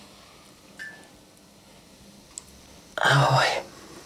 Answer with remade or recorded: recorded